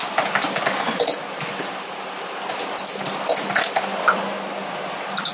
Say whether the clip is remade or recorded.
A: recorded